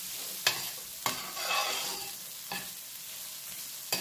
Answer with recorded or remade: recorded